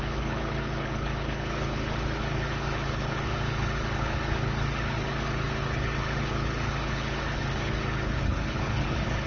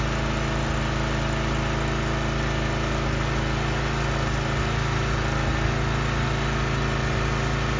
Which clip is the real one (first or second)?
second